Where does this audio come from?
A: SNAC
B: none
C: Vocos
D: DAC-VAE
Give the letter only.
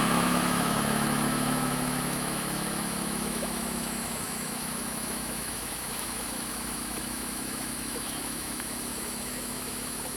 D